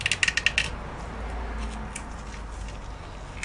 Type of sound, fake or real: real